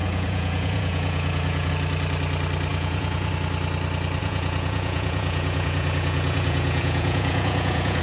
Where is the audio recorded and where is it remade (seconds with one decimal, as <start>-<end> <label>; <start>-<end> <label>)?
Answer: 0.0-1.7 remade; 1.7-2.7 recorded; 2.7-3.3 remade; 3.3-4.2 recorded; 4.2-8.0 remade